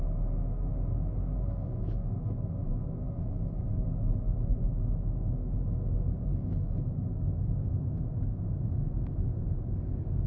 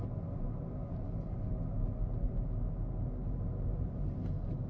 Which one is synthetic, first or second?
first